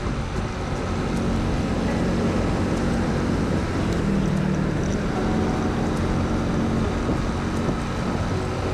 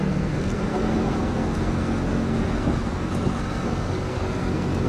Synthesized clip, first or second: second